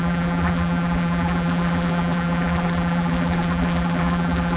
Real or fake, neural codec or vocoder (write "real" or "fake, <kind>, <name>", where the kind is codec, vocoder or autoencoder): fake, vocoder, BigVGAN v2